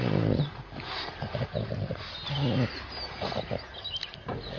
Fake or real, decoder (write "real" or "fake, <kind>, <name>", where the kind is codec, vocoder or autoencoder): real